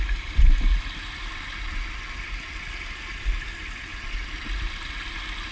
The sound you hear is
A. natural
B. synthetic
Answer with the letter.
A